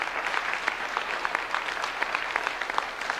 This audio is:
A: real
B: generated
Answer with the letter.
A